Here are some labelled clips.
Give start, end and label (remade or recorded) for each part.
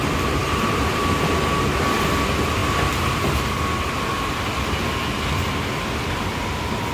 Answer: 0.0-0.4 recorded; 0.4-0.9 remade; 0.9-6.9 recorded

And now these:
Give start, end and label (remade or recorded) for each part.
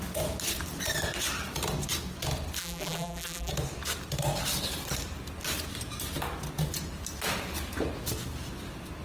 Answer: 0.0-2.6 recorded; 2.6-3.5 remade; 3.5-9.0 recorded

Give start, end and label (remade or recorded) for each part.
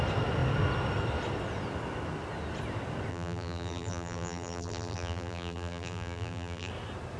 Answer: 0.0-3.1 recorded; 3.1-6.7 remade; 6.7-7.2 recorded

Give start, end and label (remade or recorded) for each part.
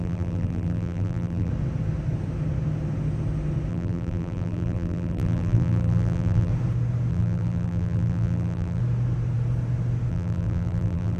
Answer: 0.0-1.5 remade; 1.5-3.7 recorded; 3.7-6.5 remade; 6.5-7.1 recorded; 7.1-8.8 remade; 8.8-10.1 recorded; 10.1-11.2 remade